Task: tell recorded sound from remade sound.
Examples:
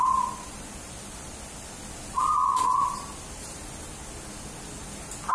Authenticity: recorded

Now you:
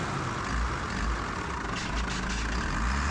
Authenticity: recorded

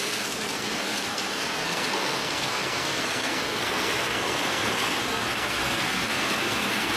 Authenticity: remade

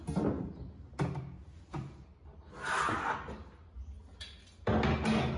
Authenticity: recorded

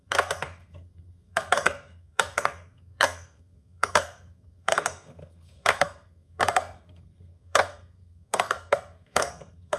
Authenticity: remade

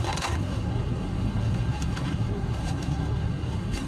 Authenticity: remade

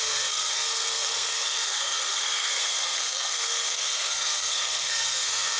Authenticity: remade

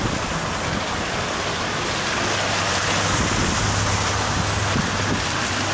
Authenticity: recorded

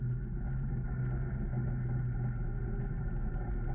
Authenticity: recorded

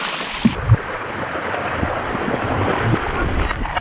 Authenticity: recorded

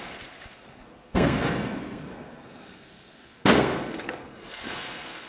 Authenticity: remade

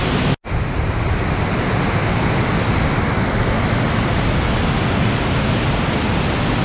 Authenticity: recorded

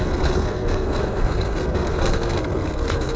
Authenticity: remade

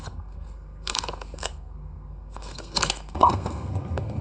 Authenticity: remade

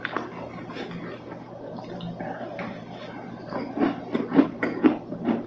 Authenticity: recorded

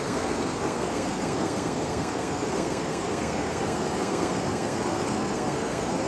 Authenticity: remade